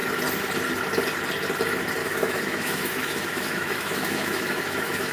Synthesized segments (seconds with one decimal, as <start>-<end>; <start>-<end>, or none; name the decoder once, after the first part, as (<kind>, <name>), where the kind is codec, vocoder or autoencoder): 2.0-5.1 (autoencoder, DAC-VAE)